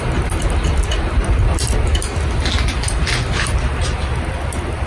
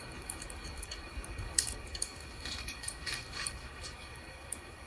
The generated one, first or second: second